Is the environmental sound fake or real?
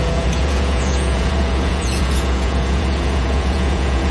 fake